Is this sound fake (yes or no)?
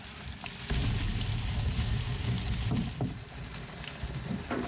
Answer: no